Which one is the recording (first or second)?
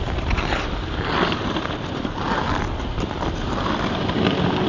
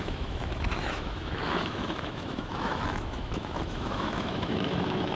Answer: first